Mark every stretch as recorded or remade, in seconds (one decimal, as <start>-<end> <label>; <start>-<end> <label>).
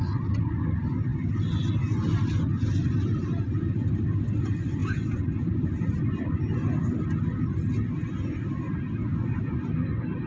0.0-10.3 recorded